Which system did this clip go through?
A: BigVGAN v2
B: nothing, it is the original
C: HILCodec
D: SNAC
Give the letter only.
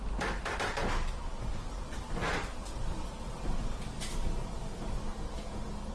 B